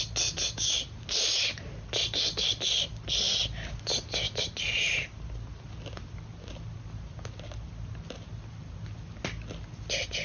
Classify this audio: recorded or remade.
recorded